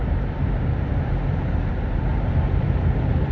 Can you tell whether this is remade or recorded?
remade